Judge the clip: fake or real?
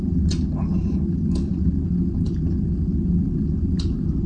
real